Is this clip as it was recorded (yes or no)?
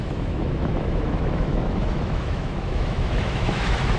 no